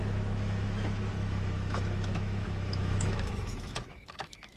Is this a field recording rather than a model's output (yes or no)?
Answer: no